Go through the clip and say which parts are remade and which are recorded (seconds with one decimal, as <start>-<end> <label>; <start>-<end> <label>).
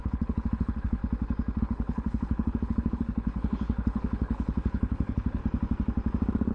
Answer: 0.0-1.0 remade; 1.0-1.6 recorded; 1.6-5.4 remade; 5.4-6.5 recorded